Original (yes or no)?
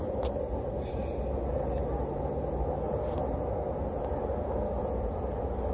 yes